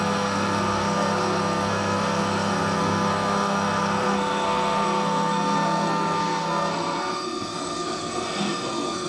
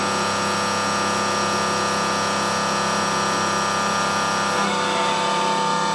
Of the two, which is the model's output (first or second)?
first